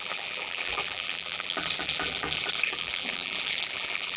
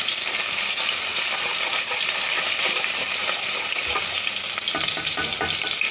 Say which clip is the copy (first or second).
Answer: first